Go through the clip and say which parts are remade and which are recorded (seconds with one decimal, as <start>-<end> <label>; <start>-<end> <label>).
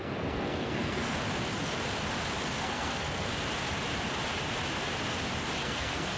0.0-1.2 remade; 1.2-2.6 recorded; 2.6-3.3 remade; 3.3-5.6 recorded; 5.6-6.2 remade